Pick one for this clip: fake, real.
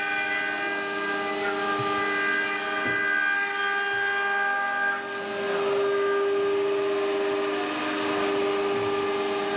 real